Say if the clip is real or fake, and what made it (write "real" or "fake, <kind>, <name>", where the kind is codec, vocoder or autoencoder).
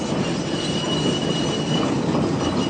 real